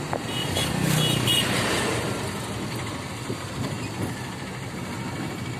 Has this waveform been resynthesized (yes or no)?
no